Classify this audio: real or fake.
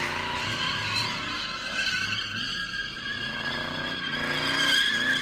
real